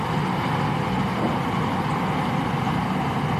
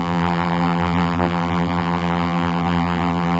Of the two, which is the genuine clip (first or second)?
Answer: first